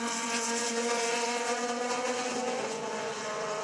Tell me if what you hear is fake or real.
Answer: fake